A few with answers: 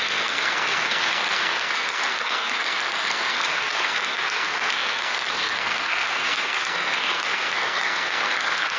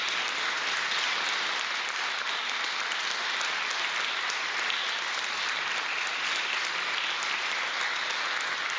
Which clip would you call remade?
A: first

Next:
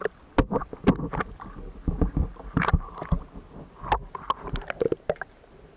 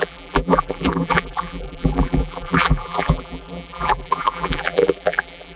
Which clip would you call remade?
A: second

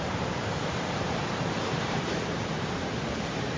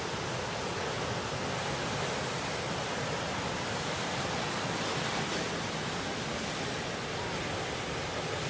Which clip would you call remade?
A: first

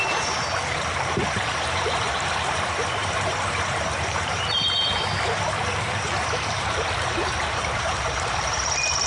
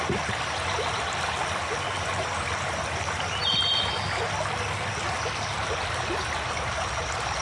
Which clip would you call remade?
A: first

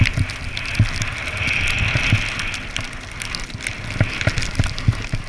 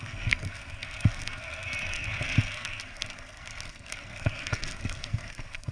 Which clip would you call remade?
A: second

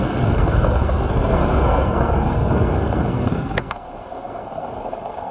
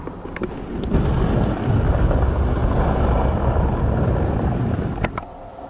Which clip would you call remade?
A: first